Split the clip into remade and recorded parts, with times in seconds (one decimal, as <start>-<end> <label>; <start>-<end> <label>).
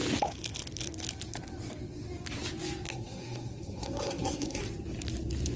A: 0.0-2.9 recorded; 2.9-4.6 remade; 4.6-5.6 recorded